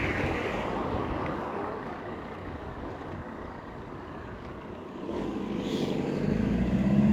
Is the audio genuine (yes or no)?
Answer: no